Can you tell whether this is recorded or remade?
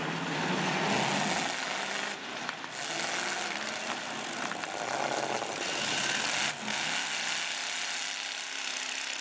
recorded